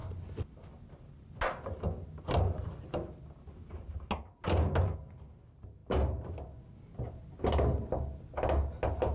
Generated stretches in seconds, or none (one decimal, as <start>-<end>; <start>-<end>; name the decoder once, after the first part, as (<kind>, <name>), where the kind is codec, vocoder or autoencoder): none